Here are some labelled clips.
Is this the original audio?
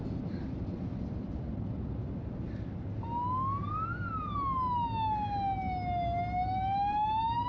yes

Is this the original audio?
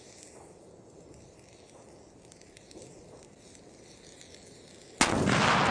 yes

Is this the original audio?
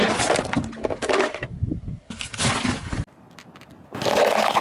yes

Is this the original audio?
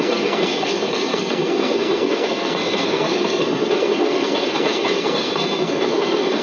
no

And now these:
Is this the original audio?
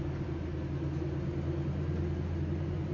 yes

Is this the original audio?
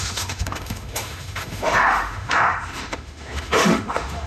no